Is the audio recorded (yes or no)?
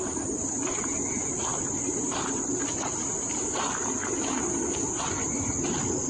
yes